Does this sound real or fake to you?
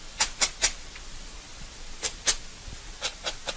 real